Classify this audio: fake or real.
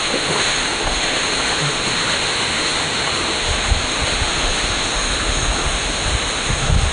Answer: fake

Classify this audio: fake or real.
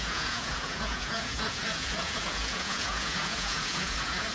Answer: fake